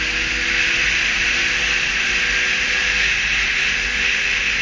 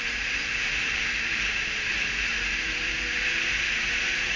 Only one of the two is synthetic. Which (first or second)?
second